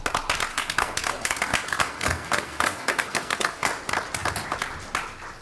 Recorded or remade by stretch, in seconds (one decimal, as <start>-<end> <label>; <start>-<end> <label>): 0.0-0.5 recorded; 0.5-3.7 remade; 3.7-5.4 recorded